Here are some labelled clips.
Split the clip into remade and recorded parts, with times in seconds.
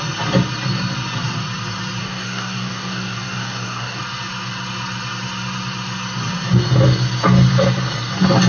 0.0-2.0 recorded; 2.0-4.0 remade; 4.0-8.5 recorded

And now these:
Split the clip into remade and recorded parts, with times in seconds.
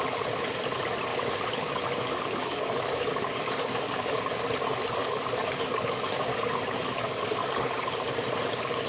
0.0-1.1 recorded; 1.1-4.2 remade; 4.2-5.0 recorded; 5.0-7.7 remade; 7.7-8.9 recorded